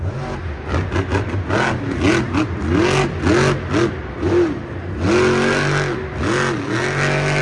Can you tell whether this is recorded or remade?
recorded